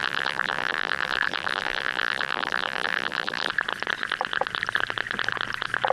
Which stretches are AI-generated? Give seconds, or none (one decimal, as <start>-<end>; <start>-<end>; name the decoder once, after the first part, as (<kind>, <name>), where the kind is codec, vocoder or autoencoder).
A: 0.0-3.5 (vocoder, BigVGAN v2)